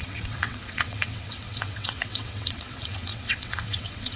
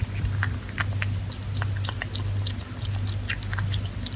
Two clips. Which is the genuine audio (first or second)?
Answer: second